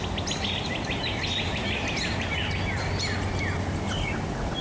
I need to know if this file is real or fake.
real